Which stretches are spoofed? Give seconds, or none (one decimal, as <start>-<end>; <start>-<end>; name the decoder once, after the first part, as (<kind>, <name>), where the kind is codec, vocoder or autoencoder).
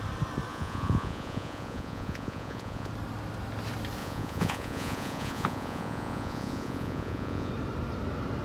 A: 0.5-2.9 (vocoder, Vocos); 4.0-7.5